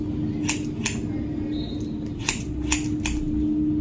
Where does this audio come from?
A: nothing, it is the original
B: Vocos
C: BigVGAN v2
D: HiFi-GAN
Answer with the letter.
A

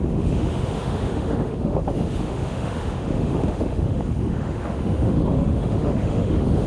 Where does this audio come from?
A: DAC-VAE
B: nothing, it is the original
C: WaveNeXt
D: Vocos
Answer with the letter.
A